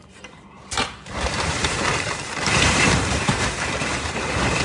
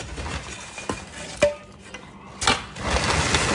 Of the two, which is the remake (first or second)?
first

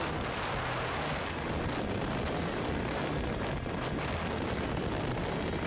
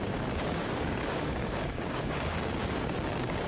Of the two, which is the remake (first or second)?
second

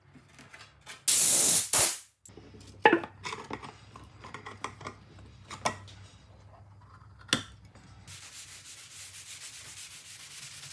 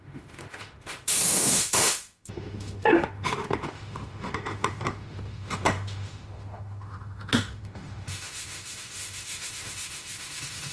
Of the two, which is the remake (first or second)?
second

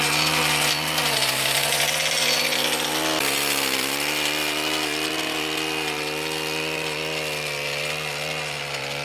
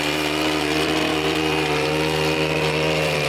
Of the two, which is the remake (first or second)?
second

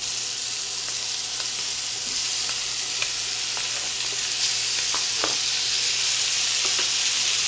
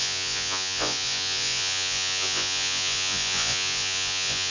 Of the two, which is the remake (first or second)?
second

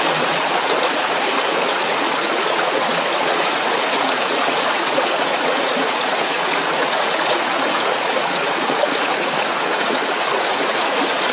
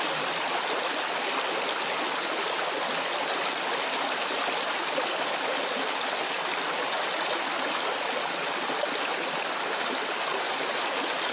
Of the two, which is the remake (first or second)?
first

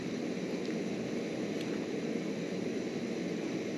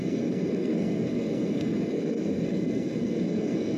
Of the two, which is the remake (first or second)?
second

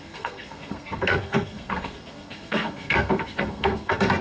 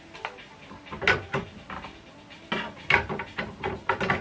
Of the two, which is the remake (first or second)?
first